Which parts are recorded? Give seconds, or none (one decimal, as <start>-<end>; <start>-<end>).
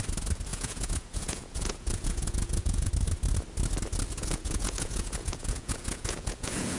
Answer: 0.0-0.5; 2.9-4.2